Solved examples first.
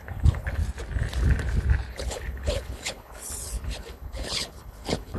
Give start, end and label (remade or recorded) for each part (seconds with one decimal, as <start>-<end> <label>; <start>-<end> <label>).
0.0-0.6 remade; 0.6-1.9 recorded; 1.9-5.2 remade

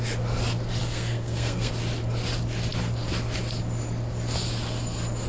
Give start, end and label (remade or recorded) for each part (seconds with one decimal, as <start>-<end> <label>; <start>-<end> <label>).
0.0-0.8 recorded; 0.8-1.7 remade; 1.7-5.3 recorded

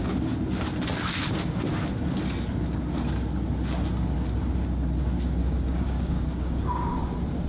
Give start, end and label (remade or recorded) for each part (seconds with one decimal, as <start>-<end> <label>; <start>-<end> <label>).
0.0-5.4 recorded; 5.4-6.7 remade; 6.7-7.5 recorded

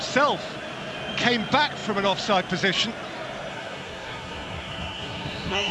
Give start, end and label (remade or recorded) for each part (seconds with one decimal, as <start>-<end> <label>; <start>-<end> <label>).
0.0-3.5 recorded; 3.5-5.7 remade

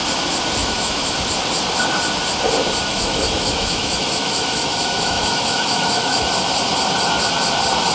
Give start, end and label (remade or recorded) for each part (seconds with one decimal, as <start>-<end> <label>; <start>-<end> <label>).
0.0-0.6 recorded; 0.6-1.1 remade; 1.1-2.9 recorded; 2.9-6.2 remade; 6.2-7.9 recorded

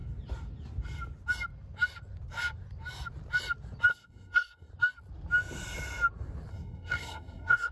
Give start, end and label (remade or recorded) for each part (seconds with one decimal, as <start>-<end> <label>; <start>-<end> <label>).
0.0-3.9 recorded; 3.9-4.7 remade; 4.7-6.5 recorded; 6.5-7.7 remade

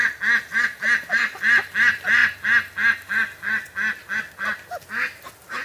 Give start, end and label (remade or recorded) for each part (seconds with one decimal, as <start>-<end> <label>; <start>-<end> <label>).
0.0-5.6 recorded

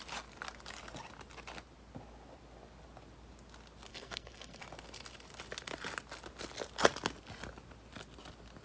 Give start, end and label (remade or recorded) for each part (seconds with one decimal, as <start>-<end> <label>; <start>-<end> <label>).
0.0-3.9 recorded; 3.9-4.6 remade; 4.6-8.6 recorded